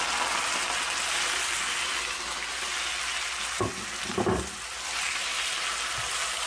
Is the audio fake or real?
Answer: real